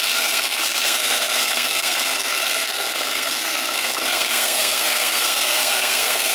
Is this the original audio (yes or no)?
no